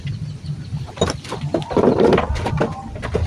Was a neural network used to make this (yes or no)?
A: no